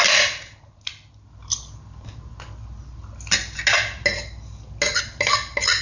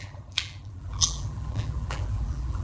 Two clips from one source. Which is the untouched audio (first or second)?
first